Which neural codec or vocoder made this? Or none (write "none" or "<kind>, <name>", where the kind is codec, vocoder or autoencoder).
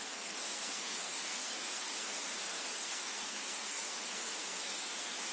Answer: codec, SNAC